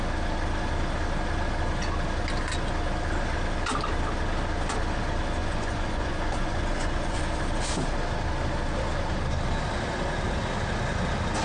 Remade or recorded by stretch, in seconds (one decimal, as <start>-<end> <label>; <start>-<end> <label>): 0.0-5.4 recorded; 5.4-7.2 remade; 7.2-11.4 recorded